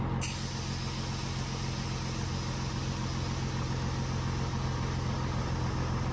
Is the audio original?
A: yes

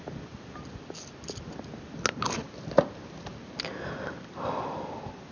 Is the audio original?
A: yes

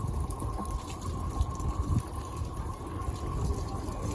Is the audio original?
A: yes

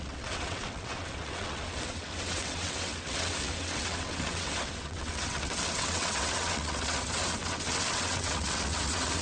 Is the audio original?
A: no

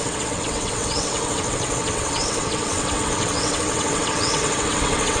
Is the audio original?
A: no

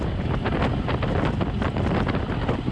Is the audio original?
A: yes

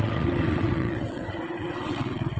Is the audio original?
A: no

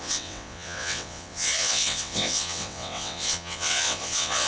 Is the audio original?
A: no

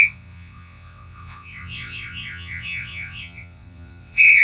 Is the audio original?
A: no